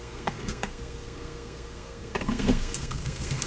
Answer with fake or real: fake